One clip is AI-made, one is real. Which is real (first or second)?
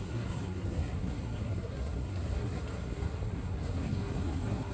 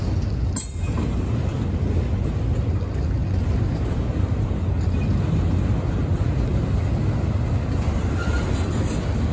second